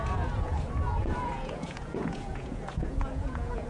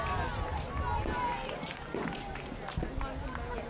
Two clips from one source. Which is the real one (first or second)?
second